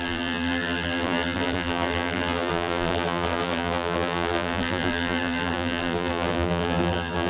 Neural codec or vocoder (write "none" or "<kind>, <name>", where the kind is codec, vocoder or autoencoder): vocoder, BigVGAN v2